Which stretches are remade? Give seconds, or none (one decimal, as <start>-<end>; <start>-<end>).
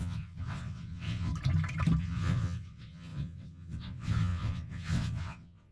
0.0-1.3; 2.0-5.7